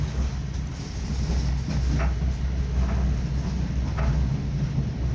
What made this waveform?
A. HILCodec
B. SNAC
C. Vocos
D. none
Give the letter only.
D